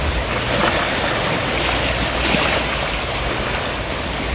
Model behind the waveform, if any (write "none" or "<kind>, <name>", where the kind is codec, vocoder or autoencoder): none